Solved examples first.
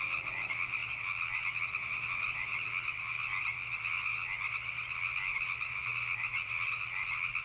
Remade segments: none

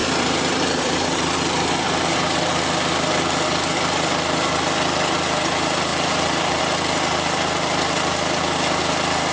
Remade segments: 0.0-2.5; 5.9-6.6

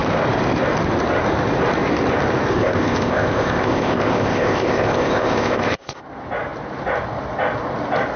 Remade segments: 2.5-6.0